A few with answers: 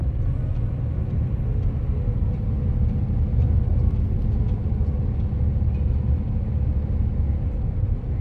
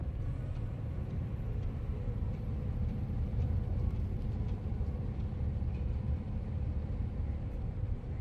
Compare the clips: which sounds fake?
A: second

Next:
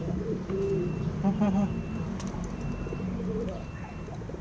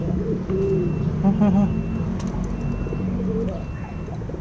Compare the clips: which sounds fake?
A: first